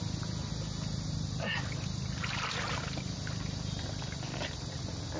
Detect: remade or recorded recorded